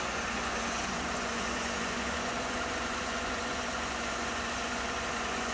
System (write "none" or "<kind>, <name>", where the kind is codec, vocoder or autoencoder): vocoder, Vocos